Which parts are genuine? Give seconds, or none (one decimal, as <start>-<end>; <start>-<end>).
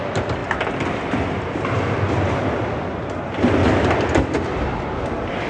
0.0-5.5